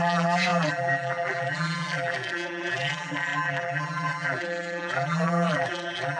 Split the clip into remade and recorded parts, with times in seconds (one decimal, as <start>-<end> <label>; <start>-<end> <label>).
0.0-6.2 remade